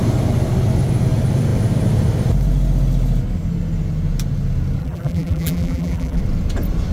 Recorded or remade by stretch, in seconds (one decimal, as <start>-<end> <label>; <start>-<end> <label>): 0.0-4.8 recorded; 4.8-6.2 remade; 6.2-6.9 recorded